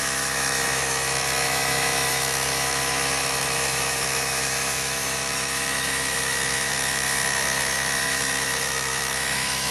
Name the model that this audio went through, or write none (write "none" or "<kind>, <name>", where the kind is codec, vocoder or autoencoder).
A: autoencoder, DAC-VAE